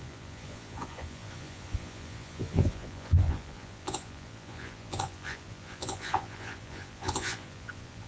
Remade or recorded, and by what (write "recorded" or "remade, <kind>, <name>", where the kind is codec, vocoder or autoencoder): remade, vocoder, Vocos